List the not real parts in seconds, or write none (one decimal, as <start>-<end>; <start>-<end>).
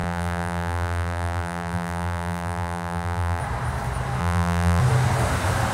0.0-3.4; 4.2-4.8